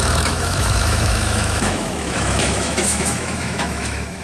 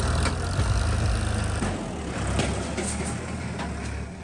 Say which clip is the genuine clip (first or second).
second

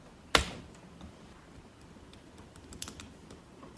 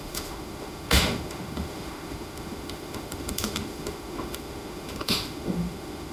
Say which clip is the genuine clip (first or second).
first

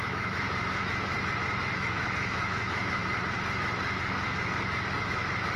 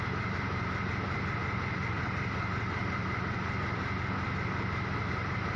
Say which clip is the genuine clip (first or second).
second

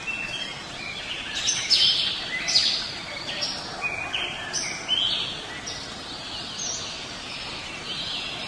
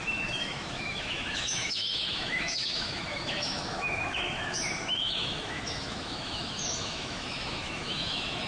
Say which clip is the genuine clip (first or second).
first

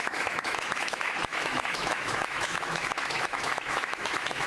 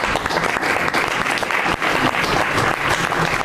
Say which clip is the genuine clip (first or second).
second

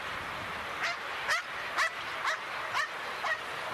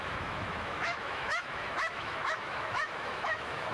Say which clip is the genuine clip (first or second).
first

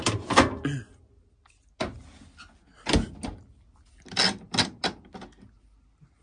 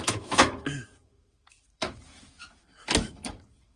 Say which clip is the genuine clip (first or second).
first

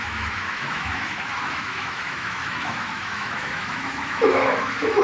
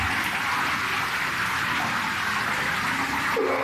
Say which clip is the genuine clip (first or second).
second